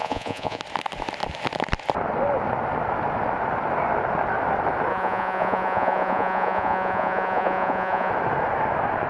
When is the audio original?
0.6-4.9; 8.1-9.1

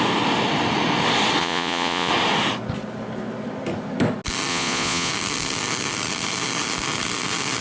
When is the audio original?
0.0-1.4; 2.1-4.5; 5.1-7.6

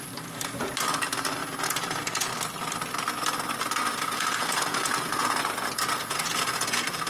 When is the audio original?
0.0-1.4; 2.3-3.9

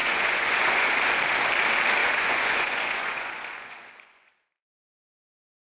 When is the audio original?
0.9-2.0; 4.3-5.7